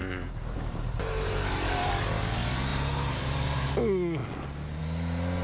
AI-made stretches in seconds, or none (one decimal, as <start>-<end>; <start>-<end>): 0.0-1.9; 2.7-3.7